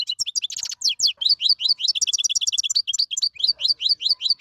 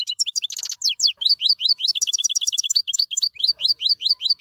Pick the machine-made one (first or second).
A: second